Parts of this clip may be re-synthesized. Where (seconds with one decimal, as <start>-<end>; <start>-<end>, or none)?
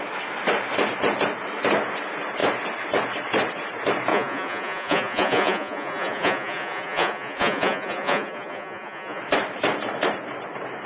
4.1-9.2